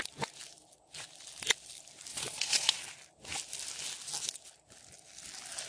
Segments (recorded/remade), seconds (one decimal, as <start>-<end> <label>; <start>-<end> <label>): 0.0-2.1 recorded; 2.1-2.8 remade; 2.8-5.7 recorded